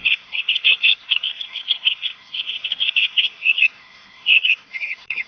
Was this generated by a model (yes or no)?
yes